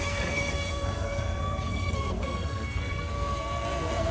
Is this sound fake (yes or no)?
yes